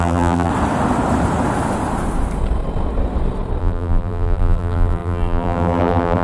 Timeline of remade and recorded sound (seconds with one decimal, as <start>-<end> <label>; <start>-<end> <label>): 0.0-0.5 remade; 0.5-3.6 recorded; 3.6-6.2 remade

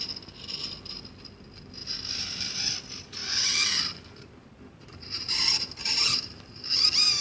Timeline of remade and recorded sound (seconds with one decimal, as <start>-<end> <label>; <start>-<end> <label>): 0.0-1.8 recorded; 1.8-2.7 remade; 2.7-3.2 recorded; 3.2-7.2 remade

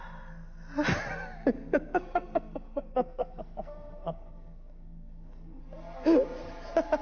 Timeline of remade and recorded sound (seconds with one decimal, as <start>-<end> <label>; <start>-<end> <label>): 0.0-1.4 recorded; 1.4-5.6 remade; 5.6-7.0 recorded

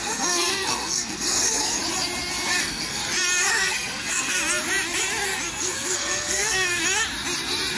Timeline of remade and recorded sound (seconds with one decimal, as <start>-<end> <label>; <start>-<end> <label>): 0.0-1.8 remade; 1.8-2.6 recorded; 2.6-3.0 remade; 3.0-3.5 recorded; 3.5-4.4 remade; 4.4-5.6 recorded; 5.6-6.8 remade; 6.8-7.8 recorded